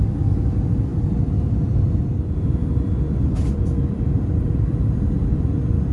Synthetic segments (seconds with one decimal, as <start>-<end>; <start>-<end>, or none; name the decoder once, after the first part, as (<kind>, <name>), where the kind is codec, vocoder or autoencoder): 0.0-5.9 (vocoder, BigVGAN v2)